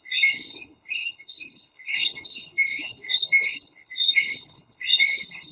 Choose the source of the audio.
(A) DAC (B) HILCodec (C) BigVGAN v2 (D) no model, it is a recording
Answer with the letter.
B